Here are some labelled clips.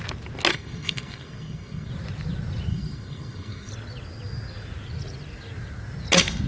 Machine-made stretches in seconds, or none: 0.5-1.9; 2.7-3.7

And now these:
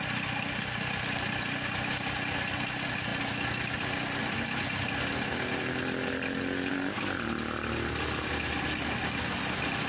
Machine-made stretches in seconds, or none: none

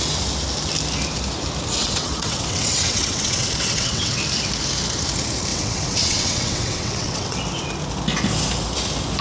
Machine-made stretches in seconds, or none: 1.8-4.2; 5.5-7.4